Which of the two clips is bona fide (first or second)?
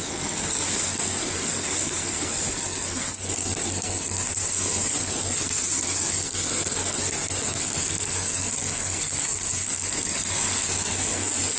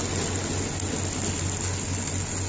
second